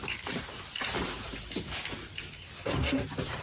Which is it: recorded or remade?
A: recorded